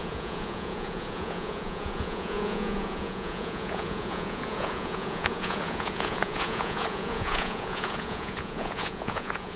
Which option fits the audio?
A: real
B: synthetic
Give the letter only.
B